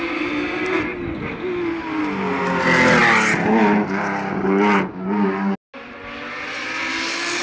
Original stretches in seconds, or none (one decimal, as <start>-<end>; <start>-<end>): 0.0-7.4